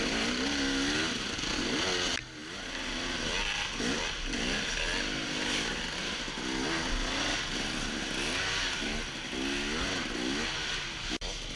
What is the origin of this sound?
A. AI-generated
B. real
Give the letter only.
B